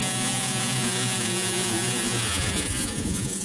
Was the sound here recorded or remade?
remade